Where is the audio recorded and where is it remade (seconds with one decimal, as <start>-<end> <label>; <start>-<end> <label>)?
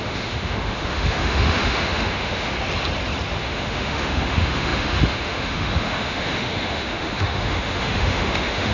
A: 0.0-2.5 remade; 2.5-3.4 recorded; 3.4-8.7 remade